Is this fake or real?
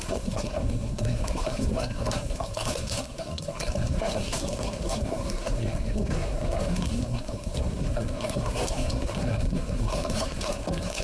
fake